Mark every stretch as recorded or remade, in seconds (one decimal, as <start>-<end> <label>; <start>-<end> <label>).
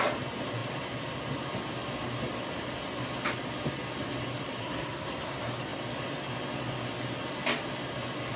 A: 0.0-4.6 recorded; 4.6-5.3 remade; 5.3-8.4 recorded